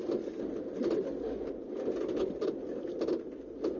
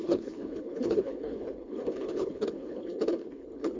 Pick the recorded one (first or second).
first